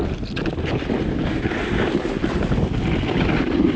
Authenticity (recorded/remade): recorded